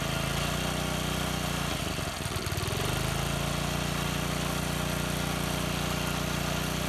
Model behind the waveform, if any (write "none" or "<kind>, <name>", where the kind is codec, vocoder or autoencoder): none